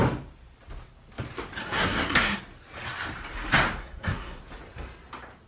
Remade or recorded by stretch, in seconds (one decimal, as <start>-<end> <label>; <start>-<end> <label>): 0.0-1.6 recorded; 1.6-2.4 remade; 2.4-3.8 recorded; 3.8-4.4 remade; 4.4-5.5 recorded